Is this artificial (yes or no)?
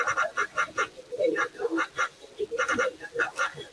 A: no